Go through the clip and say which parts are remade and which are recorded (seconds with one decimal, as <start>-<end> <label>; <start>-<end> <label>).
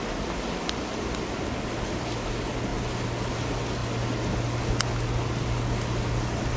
0.0-6.6 recorded